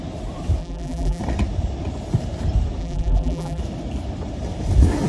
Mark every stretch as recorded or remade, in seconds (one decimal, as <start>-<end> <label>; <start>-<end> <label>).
0.0-0.6 recorded; 0.6-1.2 remade; 1.2-2.8 recorded; 2.8-3.6 remade; 3.6-5.1 recorded